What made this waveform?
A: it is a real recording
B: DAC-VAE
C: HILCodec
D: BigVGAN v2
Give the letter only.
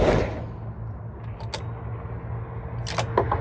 A